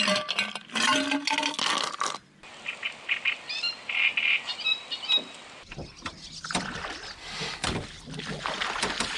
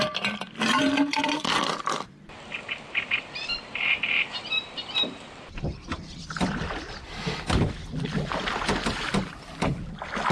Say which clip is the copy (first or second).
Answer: second